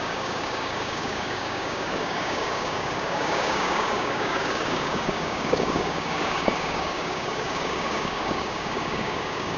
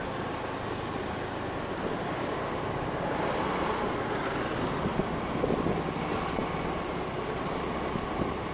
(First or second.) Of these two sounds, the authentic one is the second